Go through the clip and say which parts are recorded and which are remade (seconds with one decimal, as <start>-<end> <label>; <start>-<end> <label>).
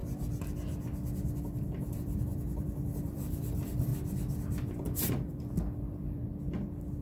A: 0.0-1.4 recorded; 1.4-3.9 remade; 3.9-5.6 recorded; 5.6-6.2 remade; 6.2-7.0 recorded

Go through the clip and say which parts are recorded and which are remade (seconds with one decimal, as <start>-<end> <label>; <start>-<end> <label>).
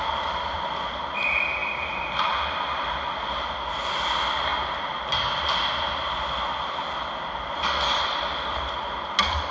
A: 0.0-9.5 recorded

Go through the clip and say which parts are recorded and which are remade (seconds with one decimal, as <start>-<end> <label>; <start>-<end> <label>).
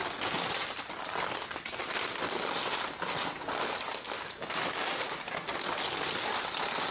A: 0.0-6.9 recorded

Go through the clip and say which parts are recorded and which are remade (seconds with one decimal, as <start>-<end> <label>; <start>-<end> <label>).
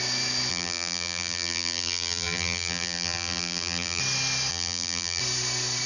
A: 0.0-0.5 recorded; 0.5-4.0 remade; 4.0-4.5 recorded; 4.5-5.2 remade; 5.2-5.9 recorded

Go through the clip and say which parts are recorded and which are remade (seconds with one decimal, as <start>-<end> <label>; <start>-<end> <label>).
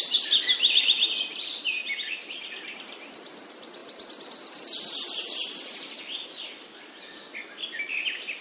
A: 0.0-8.4 recorded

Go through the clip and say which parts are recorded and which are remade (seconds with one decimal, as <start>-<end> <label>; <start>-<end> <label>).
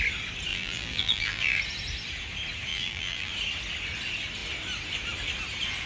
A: 0.0-0.5 recorded; 0.5-1.6 remade; 1.6-2.7 recorded; 2.7-3.3 remade; 3.3-5.9 recorded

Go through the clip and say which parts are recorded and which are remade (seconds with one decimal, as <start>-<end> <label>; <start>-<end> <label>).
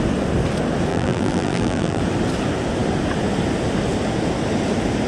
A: 0.0-0.9 recorded; 0.9-2.0 remade; 2.0-5.1 recorded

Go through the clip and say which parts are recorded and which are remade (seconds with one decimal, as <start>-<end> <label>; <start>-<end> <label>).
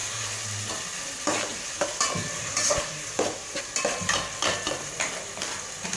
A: 0.0-1.5 recorded; 1.5-5.1 remade; 5.1-6.0 recorded